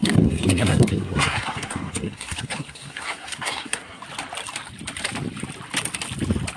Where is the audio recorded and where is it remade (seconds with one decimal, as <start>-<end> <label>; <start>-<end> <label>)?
0.0-4.0 remade; 4.0-6.6 recorded